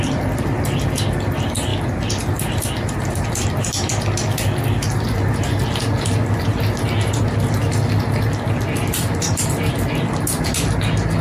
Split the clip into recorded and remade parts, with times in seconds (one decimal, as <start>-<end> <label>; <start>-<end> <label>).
0.0-11.2 recorded